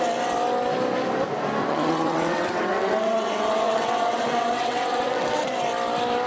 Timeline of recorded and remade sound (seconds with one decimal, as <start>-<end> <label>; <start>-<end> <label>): 0.0-1.6 recorded; 1.6-5.4 remade; 5.4-6.3 recorded